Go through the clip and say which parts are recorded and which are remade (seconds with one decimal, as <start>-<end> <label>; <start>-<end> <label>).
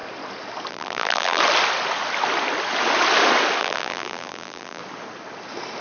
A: 0.0-0.7 recorded; 0.7-1.4 remade; 1.4-3.6 recorded; 3.6-4.8 remade; 4.8-5.8 recorded